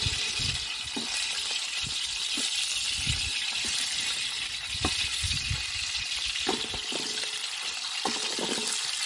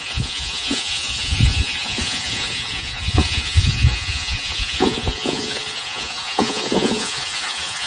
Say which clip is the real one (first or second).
first